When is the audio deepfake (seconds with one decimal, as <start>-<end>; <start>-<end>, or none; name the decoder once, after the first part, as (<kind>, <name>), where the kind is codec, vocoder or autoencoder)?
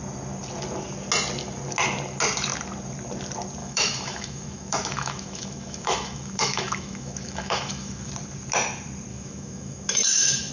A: 3.6-8.1 (autoencoder, DAC-VAE); 9.1-10.5